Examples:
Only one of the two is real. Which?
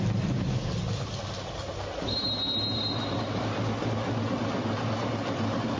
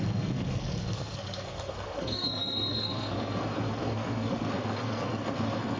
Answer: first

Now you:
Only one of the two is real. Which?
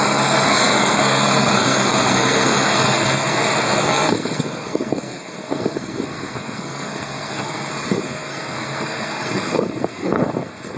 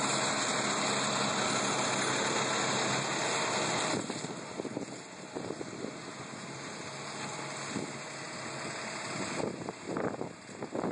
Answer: second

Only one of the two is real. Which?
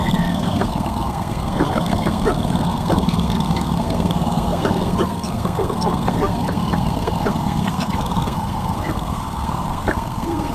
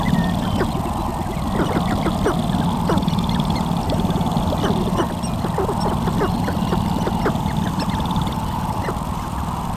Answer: second